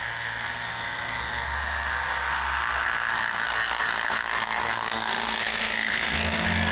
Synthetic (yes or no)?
yes